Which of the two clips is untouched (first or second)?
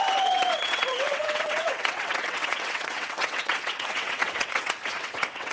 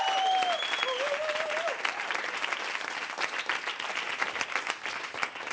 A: second